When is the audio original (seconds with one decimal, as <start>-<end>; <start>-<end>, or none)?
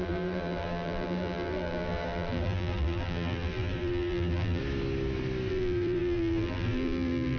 4.6-5.5